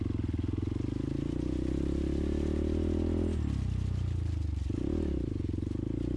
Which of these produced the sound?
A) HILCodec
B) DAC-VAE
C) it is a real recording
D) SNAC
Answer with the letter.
C